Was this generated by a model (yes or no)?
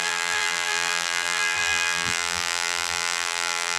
yes